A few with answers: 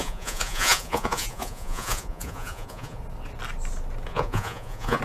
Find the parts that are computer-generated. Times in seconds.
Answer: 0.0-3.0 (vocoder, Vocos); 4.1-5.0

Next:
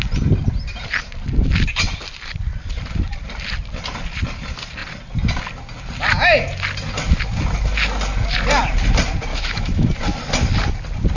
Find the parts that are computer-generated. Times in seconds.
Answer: 9.3-9.9 (autoencoder, DAC-VAE)

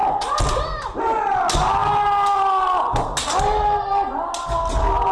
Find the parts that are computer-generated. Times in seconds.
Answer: none

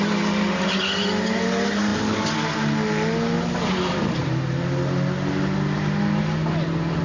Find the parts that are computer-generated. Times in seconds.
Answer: none

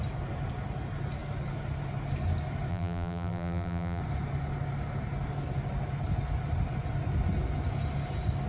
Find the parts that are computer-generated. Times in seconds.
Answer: 2.7-4.0 (vocoder, BigVGAN v2)

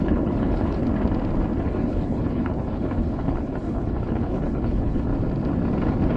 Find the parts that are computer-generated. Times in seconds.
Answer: 0.0-0.8 (codec, HILCodec); 1.6-5.1

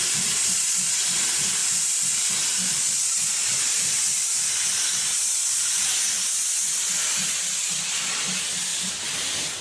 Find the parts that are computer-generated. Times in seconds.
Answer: 1.6-2.3 (vocoder, BigVGAN v2)

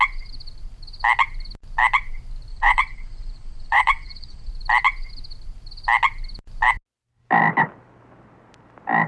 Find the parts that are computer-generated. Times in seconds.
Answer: 2.5-4.5 (vocoder, Vocos)